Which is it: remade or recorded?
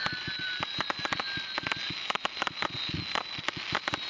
recorded